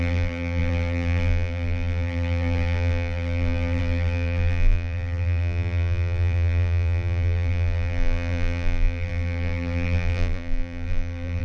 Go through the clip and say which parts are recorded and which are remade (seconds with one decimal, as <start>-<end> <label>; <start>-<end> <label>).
0.0-11.4 remade